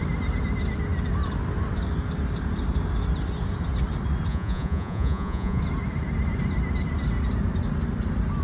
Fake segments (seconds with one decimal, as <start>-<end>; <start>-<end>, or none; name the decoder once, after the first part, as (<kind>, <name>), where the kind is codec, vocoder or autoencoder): 4.3-5.6 (vocoder, Vocos)